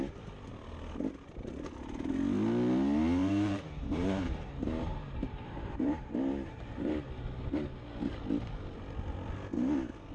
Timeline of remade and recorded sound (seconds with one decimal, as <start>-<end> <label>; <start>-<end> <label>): 0.0-3.2 recorded; 3.2-6.9 remade; 6.9-10.1 recorded